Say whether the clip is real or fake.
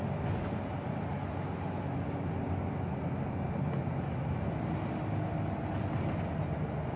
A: real